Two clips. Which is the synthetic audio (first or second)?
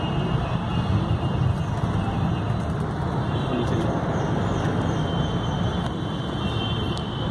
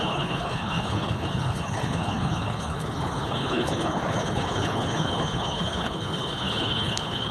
second